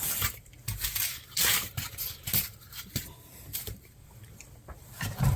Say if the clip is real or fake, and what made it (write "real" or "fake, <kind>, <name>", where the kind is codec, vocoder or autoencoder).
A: fake, vocoder, BigVGAN v2